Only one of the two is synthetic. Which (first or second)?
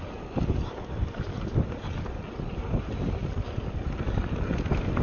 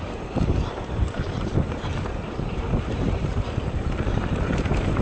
second